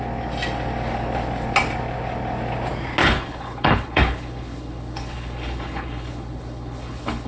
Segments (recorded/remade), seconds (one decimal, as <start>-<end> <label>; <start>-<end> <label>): 0.0-3.0 recorded; 3.0-7.3 remade